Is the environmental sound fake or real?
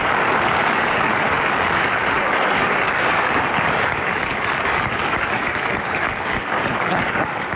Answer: fake